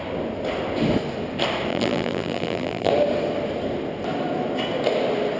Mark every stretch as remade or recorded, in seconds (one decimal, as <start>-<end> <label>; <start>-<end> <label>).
0.0-1.7 recorded; 1.7-2.9 remade; 2.9-5.4 recorded

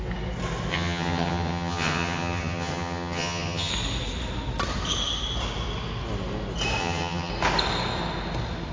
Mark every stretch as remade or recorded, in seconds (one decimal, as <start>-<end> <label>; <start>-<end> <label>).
0.0-0.7 recorded; 0.7-3.7 remade; 3.7-6.8 recorded; 6.8-7.3 remade; 7.3-8.7 recorded

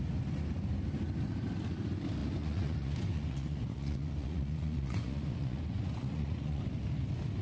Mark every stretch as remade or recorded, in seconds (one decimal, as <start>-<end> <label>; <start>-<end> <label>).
0.0-2.2 recorded; 2.2-6.6 remade; 6.6-7.4 recorded

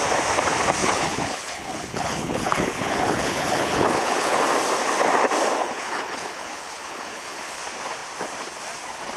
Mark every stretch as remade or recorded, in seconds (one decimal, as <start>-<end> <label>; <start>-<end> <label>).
0.0-0.8 recorded; 0.8-4.4 remade; 4.4-5.6 recorded; 5.6-7.6 remade; 7.6-9.2 recorded

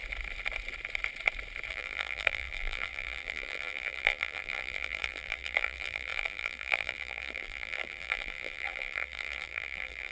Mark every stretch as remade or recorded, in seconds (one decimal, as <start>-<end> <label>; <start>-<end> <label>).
0.0-1.7 recorded; 1.7-10.1 remade